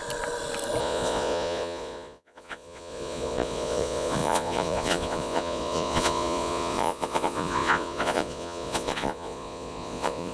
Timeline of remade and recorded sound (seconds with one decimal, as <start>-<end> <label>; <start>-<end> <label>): 0.0-0.8 recorded; 0.8-10.3 remade